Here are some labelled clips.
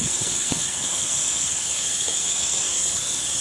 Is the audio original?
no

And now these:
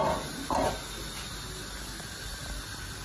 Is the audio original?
yes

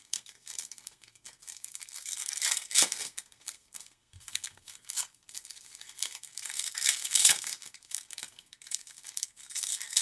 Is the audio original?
no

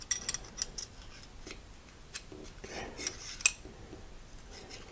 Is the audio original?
yes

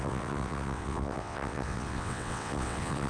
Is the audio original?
no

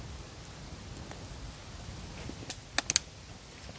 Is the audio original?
yes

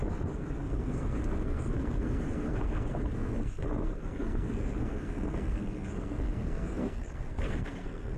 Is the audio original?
no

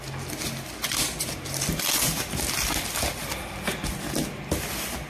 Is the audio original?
yes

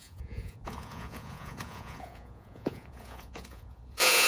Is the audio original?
no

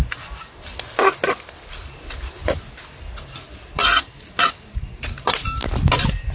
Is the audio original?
yes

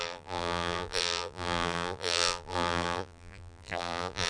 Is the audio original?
no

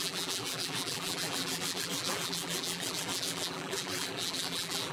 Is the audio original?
no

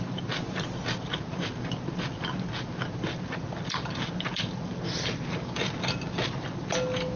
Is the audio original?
yes